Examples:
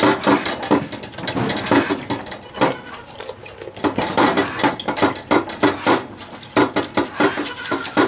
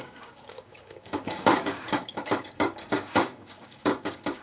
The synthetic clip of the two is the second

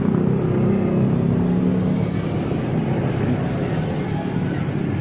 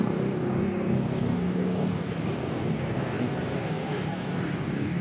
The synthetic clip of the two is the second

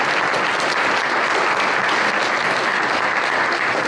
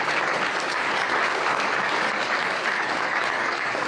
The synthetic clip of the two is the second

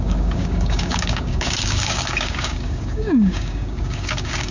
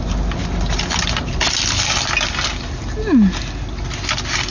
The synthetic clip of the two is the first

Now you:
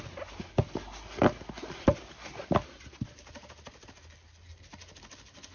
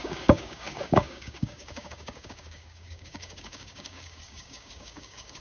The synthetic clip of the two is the second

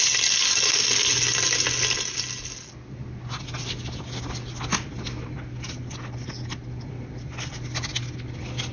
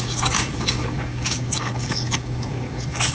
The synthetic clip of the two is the second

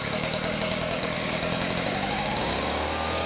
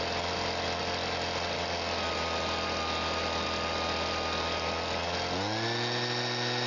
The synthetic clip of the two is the first